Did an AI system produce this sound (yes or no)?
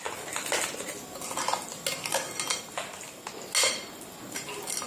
no